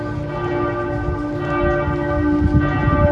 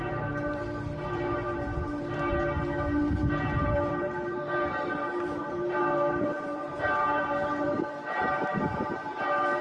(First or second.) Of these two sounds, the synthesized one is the second